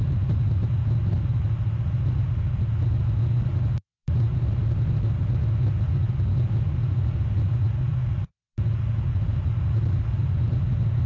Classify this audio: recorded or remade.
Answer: recorded